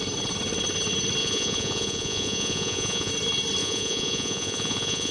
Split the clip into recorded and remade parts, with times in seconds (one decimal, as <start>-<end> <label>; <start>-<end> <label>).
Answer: 0.0-1.2 recorded; 1.2-3.1 remade; 3.1-3.6 recorded; 3.6-5.1 remade

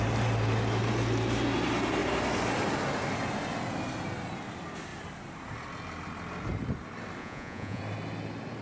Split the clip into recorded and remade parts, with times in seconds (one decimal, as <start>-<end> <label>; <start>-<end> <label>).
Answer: 0.0-7.2 recorded; 7.2-7.8 remade; 7.8-8.6 recorded

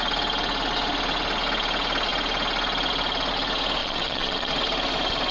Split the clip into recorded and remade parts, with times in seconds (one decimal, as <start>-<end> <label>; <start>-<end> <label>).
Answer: 0.0-3.8 recorded; 3.8-4.5 remade; 4.5-5.3 recorded